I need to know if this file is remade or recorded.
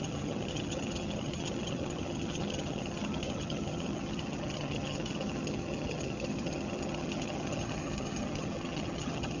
remade